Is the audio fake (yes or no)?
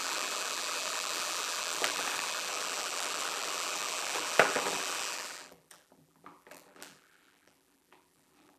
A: yes